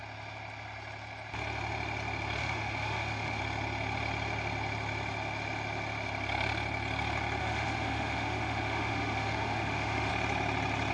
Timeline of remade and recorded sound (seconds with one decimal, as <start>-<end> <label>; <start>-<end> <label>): 0.0-2.4 recorded; 2.4-3.4 remade; 3.4-7.4 recorded; 7.4-10.1 remade; 10.1-10.9 recorded